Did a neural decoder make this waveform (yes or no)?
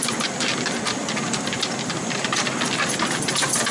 no